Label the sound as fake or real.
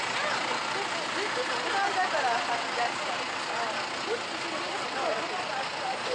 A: real